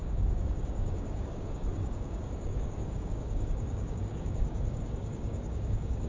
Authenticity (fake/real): fake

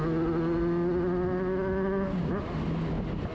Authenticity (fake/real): real